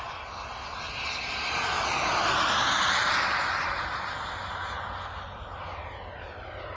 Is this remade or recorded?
recorded